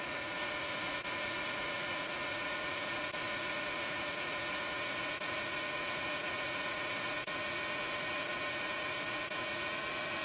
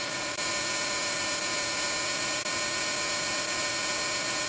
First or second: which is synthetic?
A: first